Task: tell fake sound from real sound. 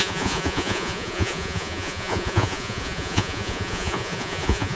fake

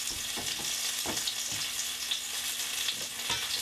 real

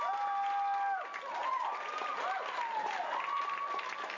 real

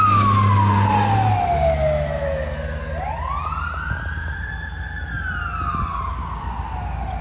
real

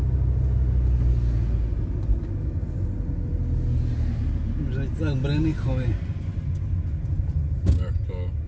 real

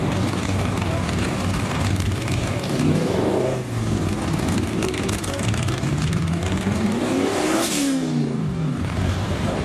fake